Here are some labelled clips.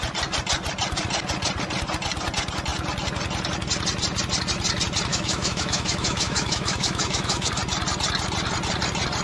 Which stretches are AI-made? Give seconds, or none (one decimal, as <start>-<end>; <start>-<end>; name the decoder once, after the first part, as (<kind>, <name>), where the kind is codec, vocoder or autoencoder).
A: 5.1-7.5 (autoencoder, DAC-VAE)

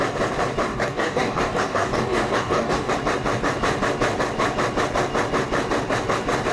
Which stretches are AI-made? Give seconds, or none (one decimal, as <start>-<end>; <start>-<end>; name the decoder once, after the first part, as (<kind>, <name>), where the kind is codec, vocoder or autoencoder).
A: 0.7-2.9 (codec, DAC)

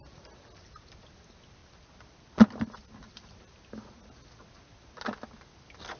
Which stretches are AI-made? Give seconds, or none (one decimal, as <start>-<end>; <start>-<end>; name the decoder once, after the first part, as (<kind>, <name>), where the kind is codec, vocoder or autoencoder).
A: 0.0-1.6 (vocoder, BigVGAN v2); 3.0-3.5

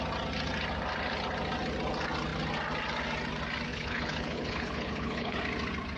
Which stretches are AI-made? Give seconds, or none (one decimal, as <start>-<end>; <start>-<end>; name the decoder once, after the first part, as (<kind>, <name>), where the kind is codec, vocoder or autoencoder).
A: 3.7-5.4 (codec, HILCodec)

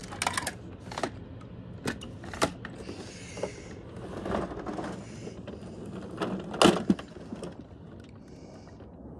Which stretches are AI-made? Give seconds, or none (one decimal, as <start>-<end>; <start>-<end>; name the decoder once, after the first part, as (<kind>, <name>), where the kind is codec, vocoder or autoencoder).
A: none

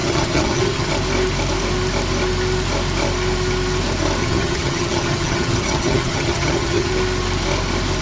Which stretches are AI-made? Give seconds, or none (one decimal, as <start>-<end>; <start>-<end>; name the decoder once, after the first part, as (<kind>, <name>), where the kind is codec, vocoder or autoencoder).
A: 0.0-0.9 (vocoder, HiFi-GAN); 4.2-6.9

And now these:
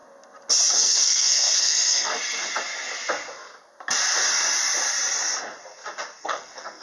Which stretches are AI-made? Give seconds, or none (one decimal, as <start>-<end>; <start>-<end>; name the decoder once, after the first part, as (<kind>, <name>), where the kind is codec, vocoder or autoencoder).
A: 0.7-2.1 (codec, SNAC); 6.2-6.8

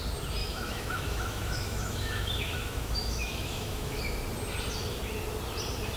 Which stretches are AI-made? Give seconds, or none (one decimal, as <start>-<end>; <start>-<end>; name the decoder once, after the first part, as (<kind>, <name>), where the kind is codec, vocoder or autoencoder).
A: 0.4-4.0 (autoencoder, DAC-VAE)